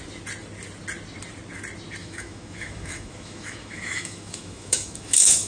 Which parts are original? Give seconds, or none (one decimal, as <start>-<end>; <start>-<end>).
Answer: 0.0-2.0